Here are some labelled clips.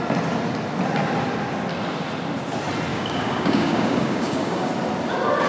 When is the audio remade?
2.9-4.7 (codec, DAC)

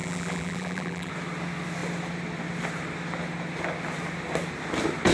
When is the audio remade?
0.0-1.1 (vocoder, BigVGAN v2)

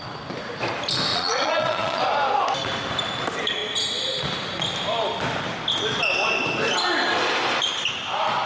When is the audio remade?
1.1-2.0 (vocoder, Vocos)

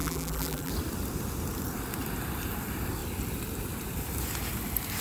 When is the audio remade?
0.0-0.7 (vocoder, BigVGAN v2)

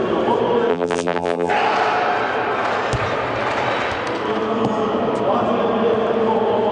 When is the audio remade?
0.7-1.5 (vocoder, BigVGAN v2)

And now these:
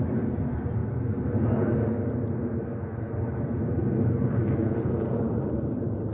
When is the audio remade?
0.0-0.8 (vocoder, BigVGAN v2); 3.1-3.8; 4.8-6.1

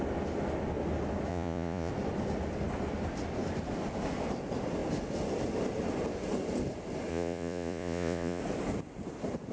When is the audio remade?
1.3-1.9 (vocoder, Vocos); 7.1-8.4